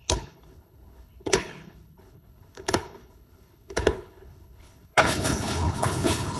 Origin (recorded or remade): remade